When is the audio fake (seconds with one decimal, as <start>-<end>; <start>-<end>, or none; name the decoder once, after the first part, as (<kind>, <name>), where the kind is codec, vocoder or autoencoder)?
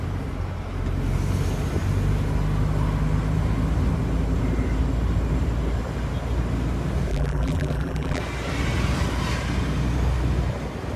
7.1-8.2 (vocoder, BigVGAN v2)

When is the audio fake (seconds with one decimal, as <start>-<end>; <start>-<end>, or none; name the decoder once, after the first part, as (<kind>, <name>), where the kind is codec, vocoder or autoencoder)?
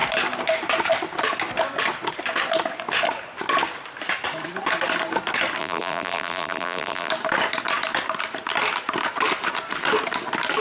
5.6-7.1 (vocoder, BigVGAN v2)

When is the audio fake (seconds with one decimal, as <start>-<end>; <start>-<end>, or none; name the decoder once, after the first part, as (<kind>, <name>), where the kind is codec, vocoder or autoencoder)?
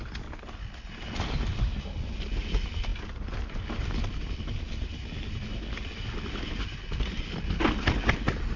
none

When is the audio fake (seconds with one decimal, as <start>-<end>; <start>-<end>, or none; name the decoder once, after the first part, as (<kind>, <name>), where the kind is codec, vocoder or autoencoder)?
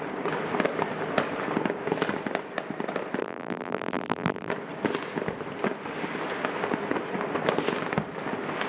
3.2-4.5 (vocoder, BigVGAN v2)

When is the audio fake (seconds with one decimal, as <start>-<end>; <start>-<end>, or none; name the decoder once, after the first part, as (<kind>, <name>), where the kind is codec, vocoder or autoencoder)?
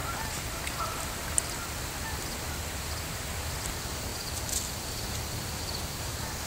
4.1-5.5 (vocoder, BigVGAN v2)